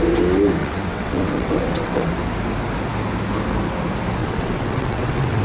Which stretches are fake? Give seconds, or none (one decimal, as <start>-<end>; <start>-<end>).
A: 0.6-2.1; 4.2-5.4